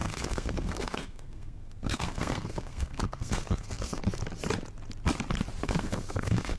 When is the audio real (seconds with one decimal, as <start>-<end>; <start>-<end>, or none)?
4.0-5.6